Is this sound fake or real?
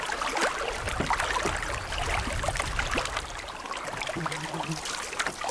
real